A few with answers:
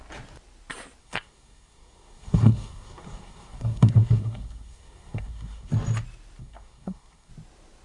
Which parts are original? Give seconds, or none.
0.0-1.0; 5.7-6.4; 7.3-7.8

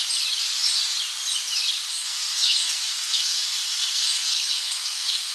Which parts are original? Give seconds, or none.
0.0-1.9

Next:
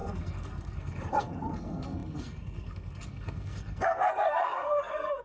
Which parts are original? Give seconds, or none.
none

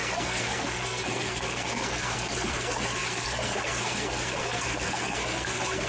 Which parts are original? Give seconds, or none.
none

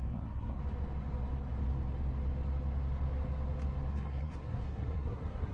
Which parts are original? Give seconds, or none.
0.6-3.9

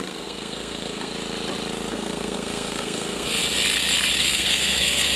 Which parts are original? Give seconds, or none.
1.1-1.9; 3.4-4.2

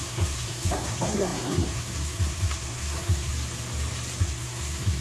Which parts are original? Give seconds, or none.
3.3-4.2